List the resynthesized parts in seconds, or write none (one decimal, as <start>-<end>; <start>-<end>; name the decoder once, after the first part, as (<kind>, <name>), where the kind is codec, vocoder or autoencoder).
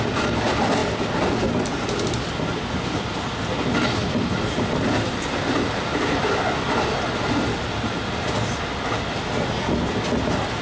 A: none